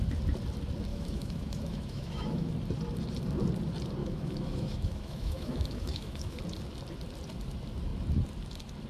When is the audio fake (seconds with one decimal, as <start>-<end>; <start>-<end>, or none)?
0.9-2.5; 4.0-6.4